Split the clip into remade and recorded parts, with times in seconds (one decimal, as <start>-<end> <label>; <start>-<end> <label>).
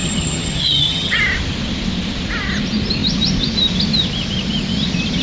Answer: 0.0-1.2 remade; 1.2-5.2 recorded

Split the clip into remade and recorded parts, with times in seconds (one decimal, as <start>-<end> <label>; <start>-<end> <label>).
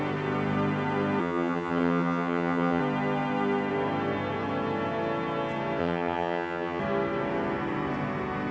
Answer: 0.0-1.2 recorded; 1.2-2.8 remade; 2.8-5.8 recorded; 5.8-6.8 remade; 6.8-8.5 recorded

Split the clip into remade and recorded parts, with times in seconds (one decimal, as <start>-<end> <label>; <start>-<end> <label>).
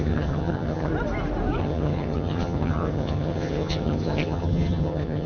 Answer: 0.0-0.9 remade; 0.9-1.6 recorded; 1.6-5.3 remade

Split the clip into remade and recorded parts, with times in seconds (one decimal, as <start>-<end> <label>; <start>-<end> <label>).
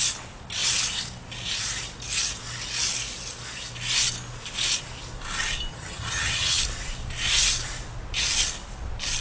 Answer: 0.0-5.7 recorded; 5.7-6.6 remade; 6.6-9.2 recorded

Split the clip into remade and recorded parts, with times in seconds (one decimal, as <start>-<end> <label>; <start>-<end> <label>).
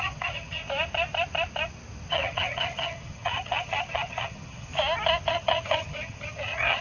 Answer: 0.0-0.6 remade; 0.6-2.1 recorded; 2.1-4.7 remade; 4.7-5.3 recorded; 5.3-6.8 remade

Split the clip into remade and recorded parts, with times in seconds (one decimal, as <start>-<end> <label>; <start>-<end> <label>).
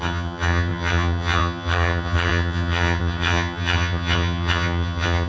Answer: 0.0-5.3 remade